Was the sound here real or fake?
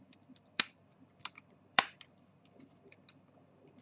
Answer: fake